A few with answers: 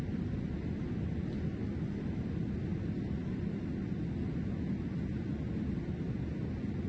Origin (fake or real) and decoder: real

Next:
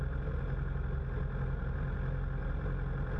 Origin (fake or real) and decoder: real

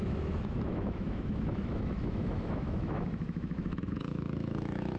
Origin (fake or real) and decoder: fake, autoencoder, DAC-VAE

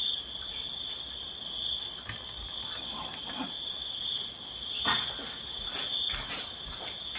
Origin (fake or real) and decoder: real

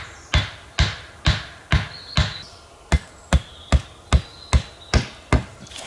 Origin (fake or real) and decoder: real